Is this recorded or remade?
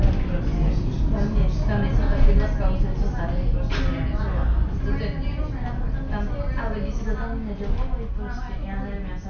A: recorded